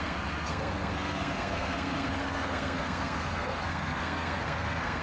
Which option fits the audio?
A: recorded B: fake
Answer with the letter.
B